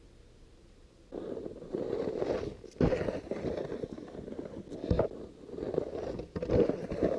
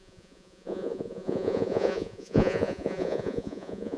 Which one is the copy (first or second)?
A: second